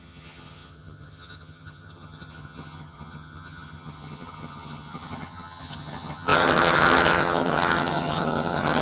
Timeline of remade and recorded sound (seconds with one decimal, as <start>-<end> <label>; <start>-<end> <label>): 0.0-8.8 remade